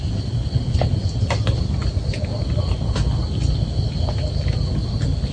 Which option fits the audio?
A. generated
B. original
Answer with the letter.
B